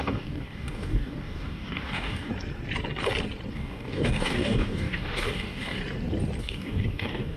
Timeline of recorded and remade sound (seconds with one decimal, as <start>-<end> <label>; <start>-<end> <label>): 0.0-2.3 remade; 2.3-3.5 recorded; 3.5-5.8 remade; 5.8-6.4 recorded; 6.4-7.4 remade